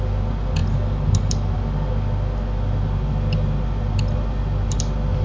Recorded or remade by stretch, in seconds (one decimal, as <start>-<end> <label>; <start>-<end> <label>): 0.0-5.2 recorded